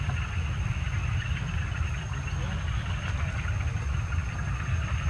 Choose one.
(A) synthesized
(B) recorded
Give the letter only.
B